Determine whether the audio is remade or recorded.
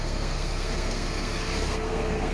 remade